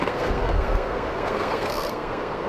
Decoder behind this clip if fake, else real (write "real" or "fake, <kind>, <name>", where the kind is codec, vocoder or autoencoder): fake, codec, SNAC